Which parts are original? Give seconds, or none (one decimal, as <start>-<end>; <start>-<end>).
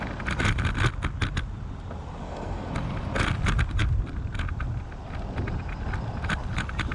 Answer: 0.0-2.2; 2.7-6.9